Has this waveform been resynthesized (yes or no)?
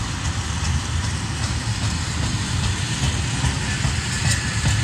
no